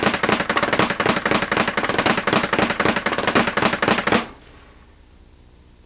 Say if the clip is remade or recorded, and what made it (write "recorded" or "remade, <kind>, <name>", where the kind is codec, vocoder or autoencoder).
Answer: recorded